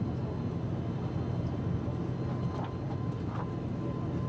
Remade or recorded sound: recorded